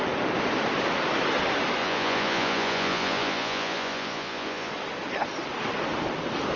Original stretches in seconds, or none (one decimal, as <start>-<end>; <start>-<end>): 0.0-1.8; 4.7-6.6